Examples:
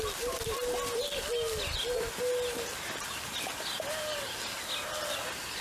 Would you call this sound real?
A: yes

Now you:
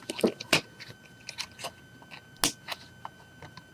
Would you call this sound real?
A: yes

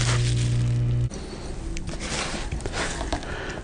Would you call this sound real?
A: yes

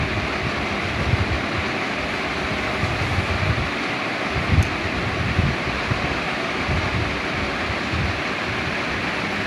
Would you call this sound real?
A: yes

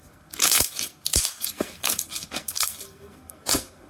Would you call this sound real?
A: no